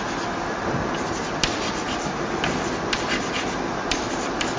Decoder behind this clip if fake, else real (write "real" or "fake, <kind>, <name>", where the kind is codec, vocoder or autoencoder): real